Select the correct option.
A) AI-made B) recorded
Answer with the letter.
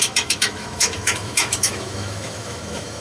A